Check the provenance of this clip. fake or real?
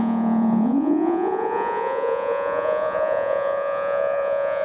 fake